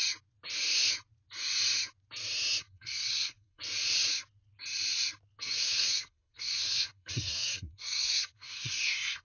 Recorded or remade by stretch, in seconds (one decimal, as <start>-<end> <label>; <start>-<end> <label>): 0.0-2.6 recorded; 2.6-3.6 remade; 3.6-5.4 recorded; 5.4-9.2 remade